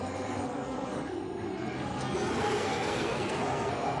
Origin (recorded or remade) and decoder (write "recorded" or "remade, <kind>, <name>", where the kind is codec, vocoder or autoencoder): remade, codec, SNAC